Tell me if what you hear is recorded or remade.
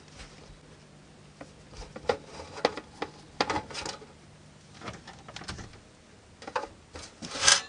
recorded